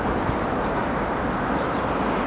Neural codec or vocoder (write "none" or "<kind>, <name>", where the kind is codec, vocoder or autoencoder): vocoder, BigVGAN v2